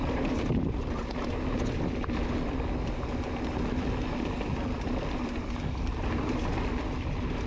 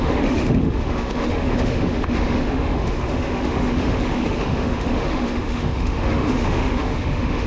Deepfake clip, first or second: second